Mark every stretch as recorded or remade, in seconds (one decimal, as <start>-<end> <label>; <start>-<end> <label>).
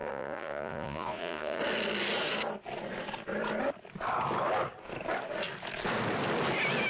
0.0-1.6 remade; 1.6-6.9 recorded